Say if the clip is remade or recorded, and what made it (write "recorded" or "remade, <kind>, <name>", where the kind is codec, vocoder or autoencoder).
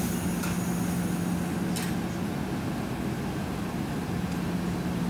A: recorded